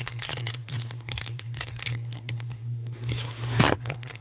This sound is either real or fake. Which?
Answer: fake